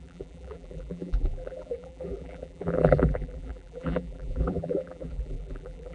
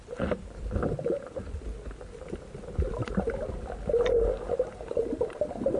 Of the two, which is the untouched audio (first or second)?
second